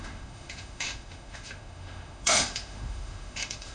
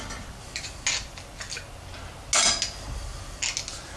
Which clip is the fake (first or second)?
first